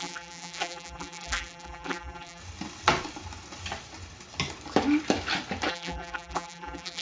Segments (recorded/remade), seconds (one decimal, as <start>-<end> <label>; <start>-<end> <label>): 0.0-2.4 remade; 2.4-5.7 recorded; 5.7-7.0 remade